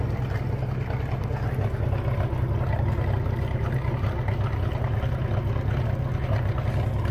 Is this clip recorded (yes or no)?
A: yes